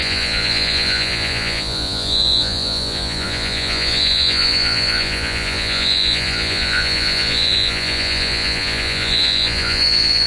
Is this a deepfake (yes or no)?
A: yes